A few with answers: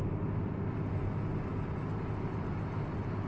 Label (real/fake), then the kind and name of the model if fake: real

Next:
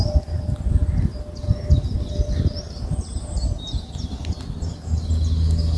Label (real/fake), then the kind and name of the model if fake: real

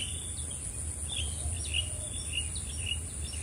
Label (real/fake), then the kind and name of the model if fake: real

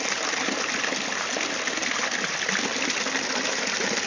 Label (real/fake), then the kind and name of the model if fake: real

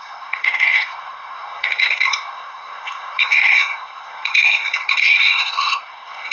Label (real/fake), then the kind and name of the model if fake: fake, codec, SNAC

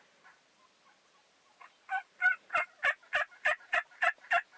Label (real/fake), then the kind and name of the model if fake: real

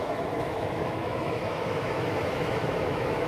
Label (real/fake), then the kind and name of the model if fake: fake, autoencoder, DAC-VAE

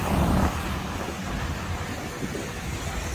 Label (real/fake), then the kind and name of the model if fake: real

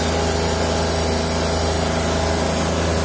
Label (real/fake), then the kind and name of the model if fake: real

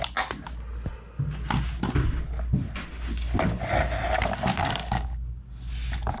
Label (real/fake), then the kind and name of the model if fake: real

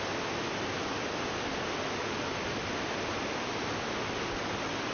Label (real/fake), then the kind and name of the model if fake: real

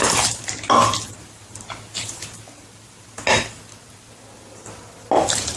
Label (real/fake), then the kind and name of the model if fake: real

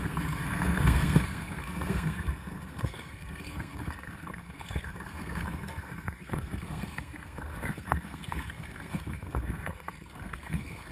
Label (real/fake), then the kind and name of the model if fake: fake, codec, SNAC